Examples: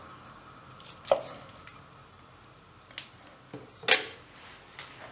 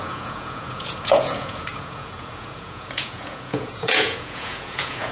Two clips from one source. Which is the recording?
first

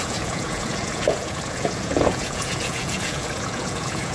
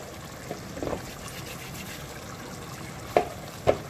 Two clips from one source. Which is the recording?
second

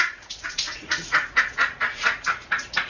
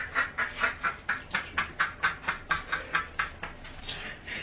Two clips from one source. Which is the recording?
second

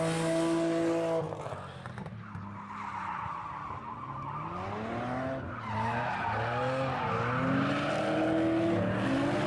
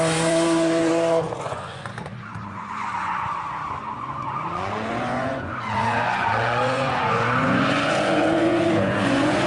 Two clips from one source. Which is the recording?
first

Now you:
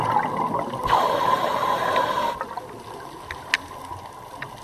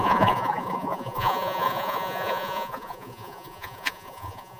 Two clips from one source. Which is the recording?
first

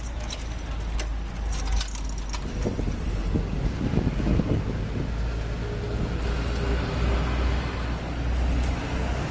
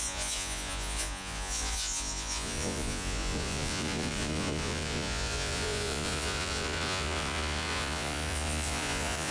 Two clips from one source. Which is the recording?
first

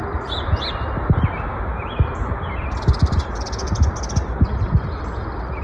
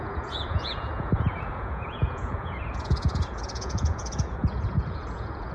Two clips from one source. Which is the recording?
first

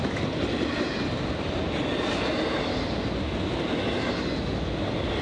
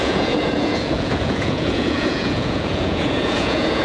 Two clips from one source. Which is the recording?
first